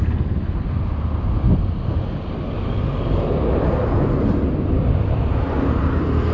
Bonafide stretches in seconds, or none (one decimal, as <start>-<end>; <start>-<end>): 0.0-6.3